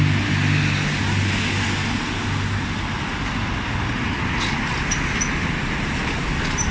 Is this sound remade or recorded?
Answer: recorded